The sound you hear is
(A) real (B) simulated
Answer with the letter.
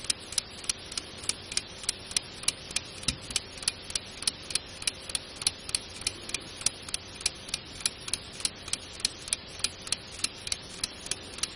A